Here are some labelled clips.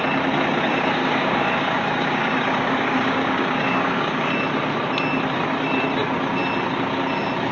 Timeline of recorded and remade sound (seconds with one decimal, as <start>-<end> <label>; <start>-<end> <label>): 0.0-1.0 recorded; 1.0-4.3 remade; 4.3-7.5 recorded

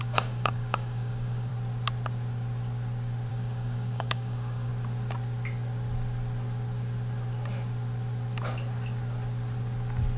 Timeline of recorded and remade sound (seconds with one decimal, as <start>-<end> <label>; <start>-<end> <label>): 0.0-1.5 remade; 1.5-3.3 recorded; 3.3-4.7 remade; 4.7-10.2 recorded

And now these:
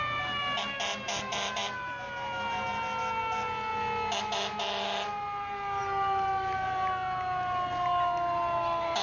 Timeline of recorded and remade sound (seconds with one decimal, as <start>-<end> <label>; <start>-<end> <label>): 0.0-9.0 recorded

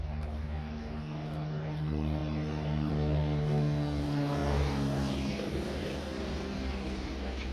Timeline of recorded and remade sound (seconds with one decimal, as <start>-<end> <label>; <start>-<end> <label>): 0.0-7.5 remade

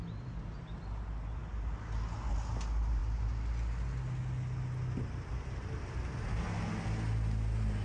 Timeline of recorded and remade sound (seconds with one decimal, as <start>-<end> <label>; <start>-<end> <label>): 0.0-7.8 recorded